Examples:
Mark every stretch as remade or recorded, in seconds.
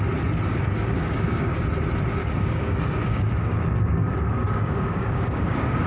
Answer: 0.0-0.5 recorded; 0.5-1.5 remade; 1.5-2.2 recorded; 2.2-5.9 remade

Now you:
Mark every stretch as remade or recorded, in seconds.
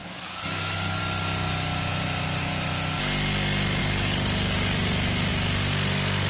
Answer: 0.0-1.0 remade; 1.0-3.8 recorded; 3.8-5.3 remade; 5.3-6.3 recorded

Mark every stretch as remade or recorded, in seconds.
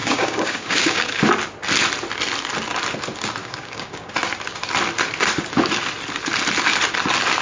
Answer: 0.0-1.1 remade; 1.1-3.4 recorded; 3.4-4.1 remade; 4.1-7.4 recorded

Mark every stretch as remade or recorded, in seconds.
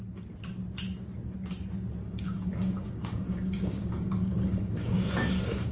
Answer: 0.0-2.0 recorded; 2.0-5.7 remade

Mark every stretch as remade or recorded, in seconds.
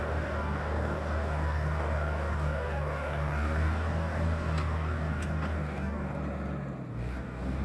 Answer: 0.0-6.2 remade; 6.2-6.9 recorded; 6.9-7.6 remade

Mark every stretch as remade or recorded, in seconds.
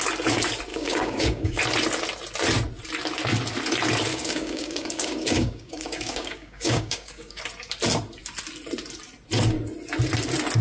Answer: 0.0-0.7 recorded; 0.7-1.6 remade; 1.6-4.1 recorded; 4.1-7.4 remade; 7.4-10.6 recorded